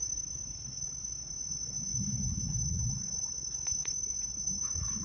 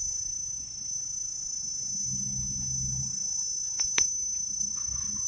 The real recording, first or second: second